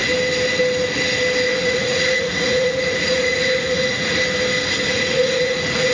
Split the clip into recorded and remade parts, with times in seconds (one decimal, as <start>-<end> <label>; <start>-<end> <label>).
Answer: 0.0-1.5 recorded; 1.5-4.2 remade; 4.2-4.9 recorded; 4.9-5.9 remade